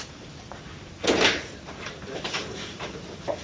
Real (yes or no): no